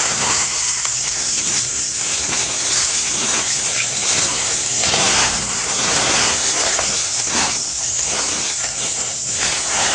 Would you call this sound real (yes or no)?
no